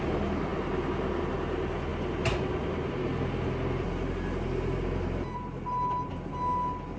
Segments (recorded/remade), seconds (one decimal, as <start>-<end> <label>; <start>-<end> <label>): 0.0-7.0 recorded